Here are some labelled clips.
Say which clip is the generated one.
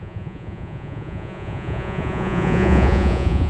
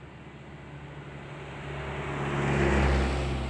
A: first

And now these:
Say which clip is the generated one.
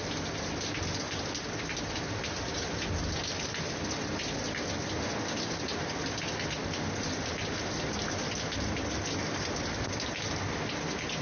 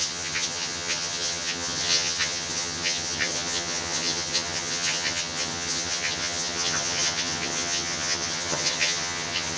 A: second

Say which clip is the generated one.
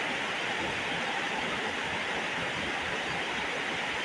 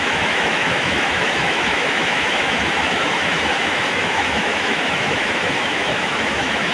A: second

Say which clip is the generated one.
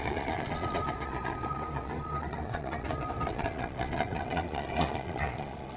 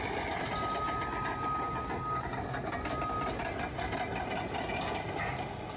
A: first